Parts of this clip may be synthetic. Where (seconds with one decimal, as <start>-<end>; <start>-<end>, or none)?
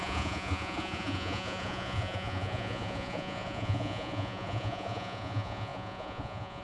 0.0-6.6